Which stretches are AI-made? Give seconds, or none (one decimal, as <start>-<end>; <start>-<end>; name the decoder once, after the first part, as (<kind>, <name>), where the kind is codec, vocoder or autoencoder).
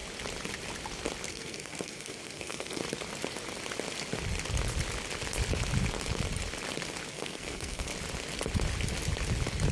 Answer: 1.3-2.8 (codec, SNAC); 7.1-7.9